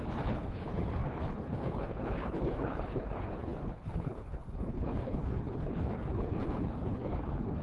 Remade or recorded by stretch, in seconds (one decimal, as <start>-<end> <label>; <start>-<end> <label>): 0.0-7.6 remade